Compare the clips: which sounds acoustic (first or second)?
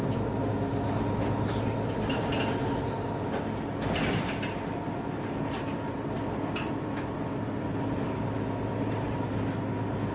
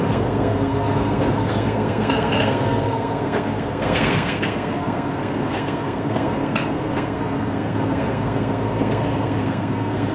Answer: first